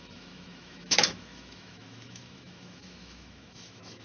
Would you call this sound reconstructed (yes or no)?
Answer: yes